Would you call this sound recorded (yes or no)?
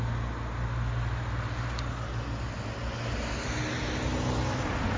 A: yes